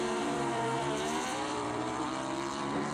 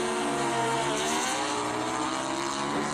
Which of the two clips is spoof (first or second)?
first